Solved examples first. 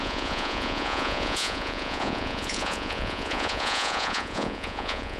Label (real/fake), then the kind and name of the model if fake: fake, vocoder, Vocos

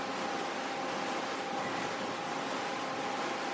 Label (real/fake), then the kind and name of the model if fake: real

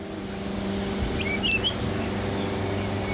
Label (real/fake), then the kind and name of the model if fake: real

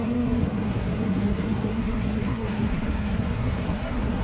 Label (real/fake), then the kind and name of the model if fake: fake, codec, SNAC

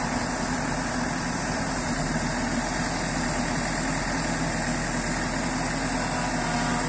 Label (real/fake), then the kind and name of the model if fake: real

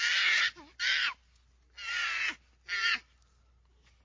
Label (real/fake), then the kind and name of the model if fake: real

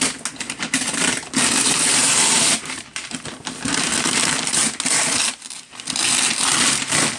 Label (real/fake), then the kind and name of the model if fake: real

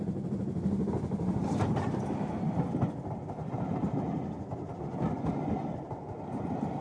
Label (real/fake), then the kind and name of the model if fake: real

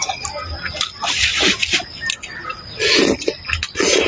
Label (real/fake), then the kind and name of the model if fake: real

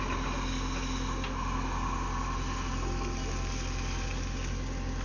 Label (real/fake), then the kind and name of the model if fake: real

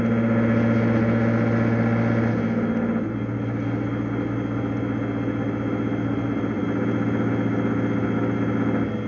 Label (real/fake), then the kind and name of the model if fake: real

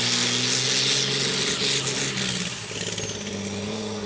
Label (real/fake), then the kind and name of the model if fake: real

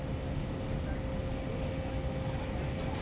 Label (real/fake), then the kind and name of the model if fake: real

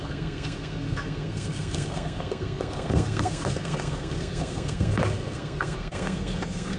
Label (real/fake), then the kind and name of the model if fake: fake, codec, SNAC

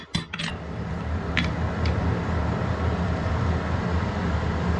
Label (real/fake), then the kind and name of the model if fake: fake, vocoder, BigVGAN v2